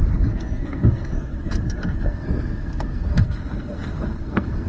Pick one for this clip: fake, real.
fake